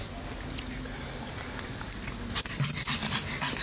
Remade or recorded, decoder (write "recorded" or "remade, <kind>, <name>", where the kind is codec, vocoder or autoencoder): remade, vocoder, BigVGAN v2